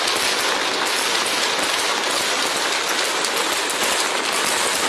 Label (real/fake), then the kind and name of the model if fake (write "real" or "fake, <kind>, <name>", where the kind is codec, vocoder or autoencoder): real